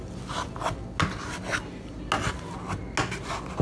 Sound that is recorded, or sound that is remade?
recorded